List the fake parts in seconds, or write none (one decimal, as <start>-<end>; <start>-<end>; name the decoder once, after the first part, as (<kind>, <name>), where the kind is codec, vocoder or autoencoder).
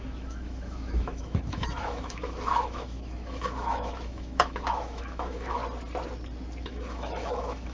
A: 0.0-5.6 (autoencoder, DAC-VAE); 6.6-7.7